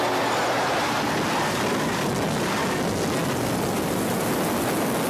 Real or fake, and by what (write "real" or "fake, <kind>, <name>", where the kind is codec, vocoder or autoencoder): real